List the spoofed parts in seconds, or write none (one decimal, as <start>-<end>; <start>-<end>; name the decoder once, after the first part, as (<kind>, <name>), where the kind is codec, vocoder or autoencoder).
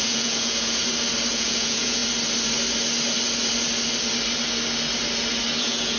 0.0-0.8 (vocoder, Vocos); 1.3-2.0; 5.6-6.0